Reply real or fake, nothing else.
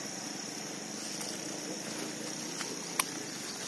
real